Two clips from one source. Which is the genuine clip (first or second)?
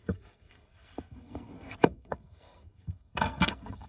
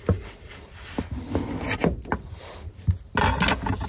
second